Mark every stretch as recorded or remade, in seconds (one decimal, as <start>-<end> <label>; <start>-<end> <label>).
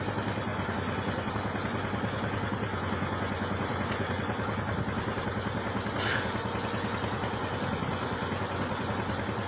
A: 0.0-0.5 recorded; 0.5-1.3 remade; 1.3-2.7 recorded; 2.7-4.2 remade; 4.2-7.4 recorded; 7.4-8.9 remade; 8.9-9.5 recorded